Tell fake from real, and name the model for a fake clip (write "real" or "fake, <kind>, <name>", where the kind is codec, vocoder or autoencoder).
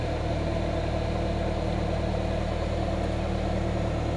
real